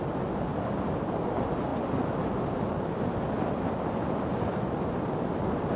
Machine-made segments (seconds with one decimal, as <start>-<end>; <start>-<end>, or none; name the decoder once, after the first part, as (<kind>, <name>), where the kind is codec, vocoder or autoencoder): 0.5-1.1 (vocoder, BigVGAN v2); 1.7-3.0